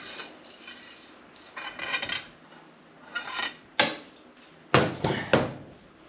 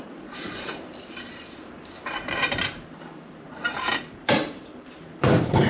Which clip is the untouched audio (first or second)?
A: first